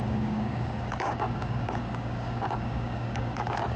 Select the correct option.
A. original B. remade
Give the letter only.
B